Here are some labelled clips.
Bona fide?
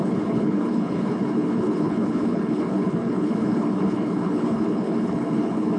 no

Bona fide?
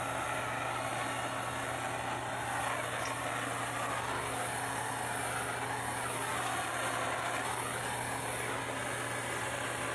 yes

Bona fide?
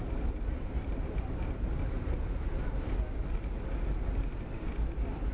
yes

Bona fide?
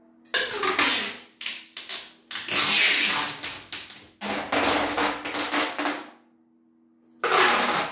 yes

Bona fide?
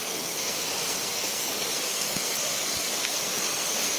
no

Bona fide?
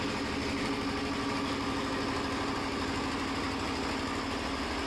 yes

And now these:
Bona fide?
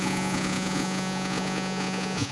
no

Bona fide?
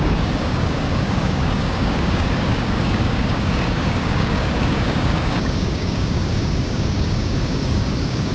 no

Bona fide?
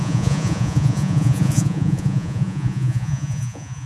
no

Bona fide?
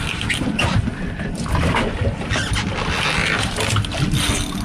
yes